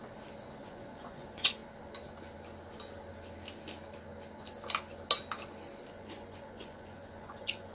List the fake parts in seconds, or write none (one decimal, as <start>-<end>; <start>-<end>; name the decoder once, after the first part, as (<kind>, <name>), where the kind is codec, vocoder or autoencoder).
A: 0.6-1.6 (vocoder, Vocos); 5.9-7.7